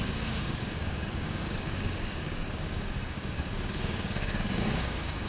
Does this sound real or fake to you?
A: fake